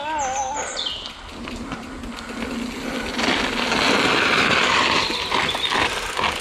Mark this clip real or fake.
real